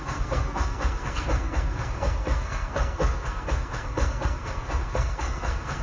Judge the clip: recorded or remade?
remade